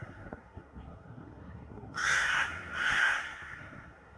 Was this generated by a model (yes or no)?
yes